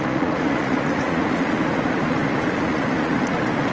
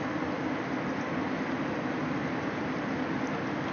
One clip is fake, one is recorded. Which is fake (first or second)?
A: first